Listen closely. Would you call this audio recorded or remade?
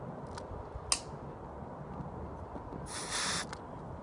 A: recorded